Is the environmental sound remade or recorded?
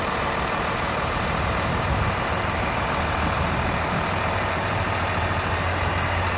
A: recorded